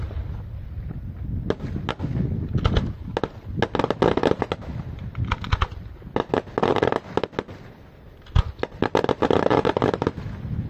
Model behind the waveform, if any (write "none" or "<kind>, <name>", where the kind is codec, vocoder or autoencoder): none